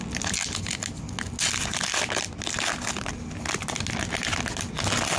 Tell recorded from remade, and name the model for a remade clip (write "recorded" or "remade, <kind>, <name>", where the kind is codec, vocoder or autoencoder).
recorded